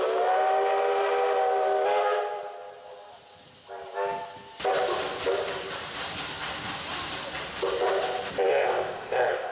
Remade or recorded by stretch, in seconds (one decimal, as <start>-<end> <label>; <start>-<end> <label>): 0.0-8.5 recorded; 8.5-9.5 remade